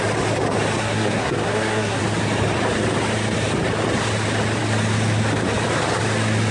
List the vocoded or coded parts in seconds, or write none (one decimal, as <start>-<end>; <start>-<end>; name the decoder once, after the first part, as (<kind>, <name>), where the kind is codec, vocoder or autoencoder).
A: 0.8-2.0 (codec, SNAC)